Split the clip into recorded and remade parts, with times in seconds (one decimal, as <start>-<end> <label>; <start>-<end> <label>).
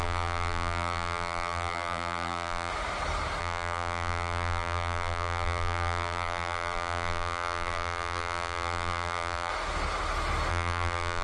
0.0-2.7 remade; 2.7-3.4 recorded; 3.4-9.5 remade; 9.5-10.5 recorded; 10.5-11.2 remade